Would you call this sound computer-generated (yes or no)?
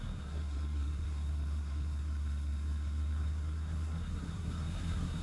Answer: yes